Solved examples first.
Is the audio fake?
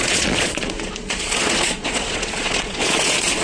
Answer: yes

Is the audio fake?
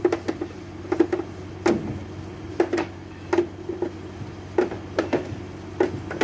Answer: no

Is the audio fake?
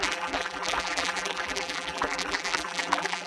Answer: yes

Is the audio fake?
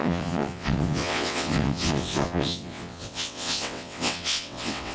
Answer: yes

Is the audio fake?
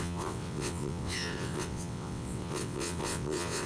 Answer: yes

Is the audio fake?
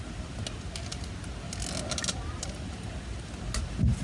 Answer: no